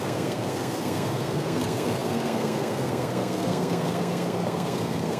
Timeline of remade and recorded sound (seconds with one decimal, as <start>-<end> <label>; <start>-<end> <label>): 0.0-5.2 remade